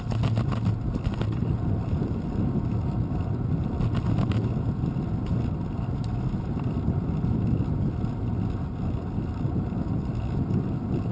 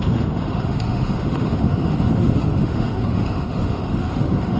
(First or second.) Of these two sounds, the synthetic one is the second